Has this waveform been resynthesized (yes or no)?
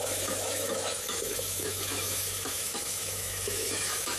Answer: yes